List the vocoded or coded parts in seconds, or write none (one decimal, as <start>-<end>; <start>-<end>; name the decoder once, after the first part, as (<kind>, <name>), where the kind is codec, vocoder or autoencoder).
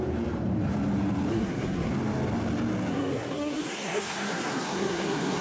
1.3-1.9 (codec, SNAC); 2.9-5.4